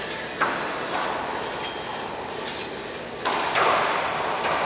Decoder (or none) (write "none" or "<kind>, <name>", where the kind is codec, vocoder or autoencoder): none